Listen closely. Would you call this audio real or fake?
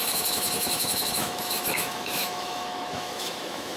fake